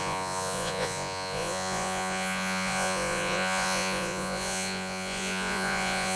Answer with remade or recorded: remade